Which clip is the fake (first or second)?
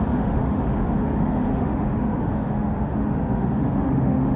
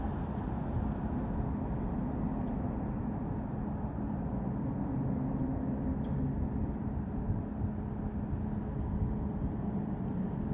first